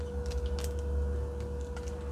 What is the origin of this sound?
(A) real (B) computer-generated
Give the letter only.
A